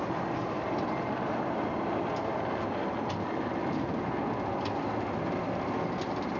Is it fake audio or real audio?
real